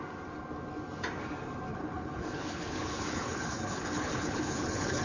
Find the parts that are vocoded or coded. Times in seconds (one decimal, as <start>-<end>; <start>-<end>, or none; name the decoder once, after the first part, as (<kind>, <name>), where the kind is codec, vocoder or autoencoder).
1.7-5.0 (codec, HILCodec)